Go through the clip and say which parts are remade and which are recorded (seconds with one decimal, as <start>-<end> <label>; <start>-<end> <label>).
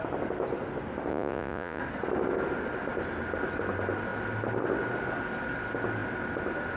0.0-1.1 recorded; 1.1-1.8 remade; 1.8-6.8 recorded